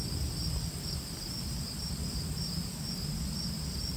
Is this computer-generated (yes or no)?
no